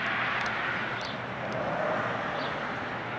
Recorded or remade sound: recorded